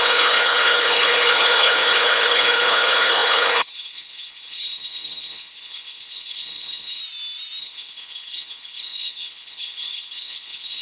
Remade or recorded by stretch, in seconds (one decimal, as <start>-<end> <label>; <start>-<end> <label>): 0.0-7.0 remade; 7.0-7.6 recorded; 7.6-10.8 remade